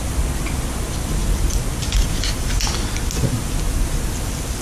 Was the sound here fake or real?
real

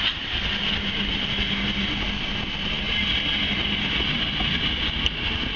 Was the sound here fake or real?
real